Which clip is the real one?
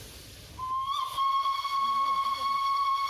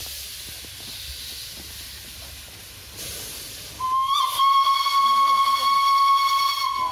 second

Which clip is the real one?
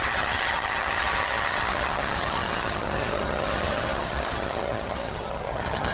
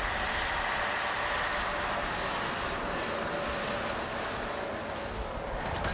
second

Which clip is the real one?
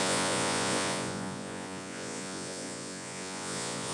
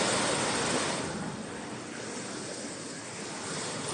second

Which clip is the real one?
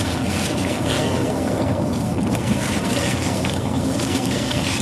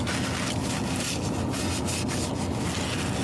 second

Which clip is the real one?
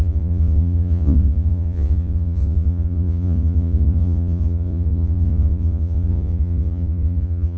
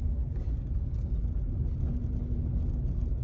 second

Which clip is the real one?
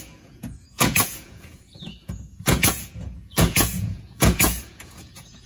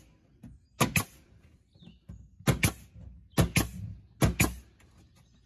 second